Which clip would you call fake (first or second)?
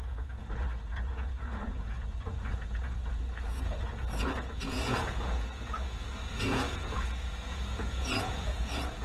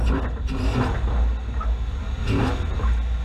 first